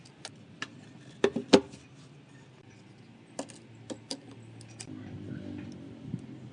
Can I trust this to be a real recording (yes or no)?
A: yes